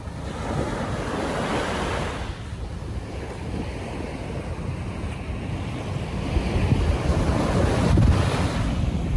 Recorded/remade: recorded